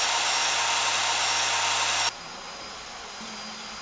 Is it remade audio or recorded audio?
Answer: recorded